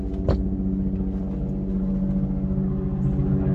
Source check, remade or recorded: recorded